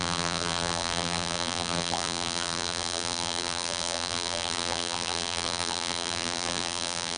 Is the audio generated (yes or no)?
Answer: yes